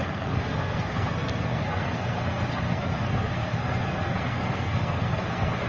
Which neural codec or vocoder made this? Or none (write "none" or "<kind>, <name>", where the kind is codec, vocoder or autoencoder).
codec, SNAC